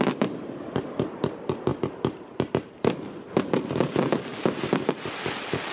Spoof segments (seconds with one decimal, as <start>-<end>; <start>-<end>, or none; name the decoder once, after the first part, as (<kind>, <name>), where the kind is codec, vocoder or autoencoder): 0.0-1.7 (vocoder, BigVGAN v2); 3.9-4.3; 4.9-5.7